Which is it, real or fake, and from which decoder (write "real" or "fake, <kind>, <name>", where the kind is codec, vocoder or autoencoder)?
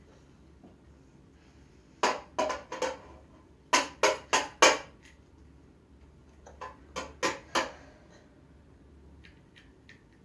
real